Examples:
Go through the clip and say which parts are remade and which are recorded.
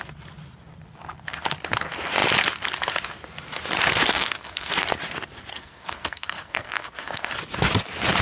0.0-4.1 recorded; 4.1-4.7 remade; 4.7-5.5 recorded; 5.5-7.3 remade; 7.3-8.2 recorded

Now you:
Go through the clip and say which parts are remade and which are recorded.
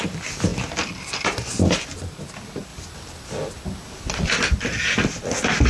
0.0-5.7 recorded